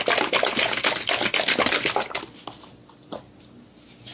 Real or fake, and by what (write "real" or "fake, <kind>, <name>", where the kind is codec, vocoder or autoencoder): real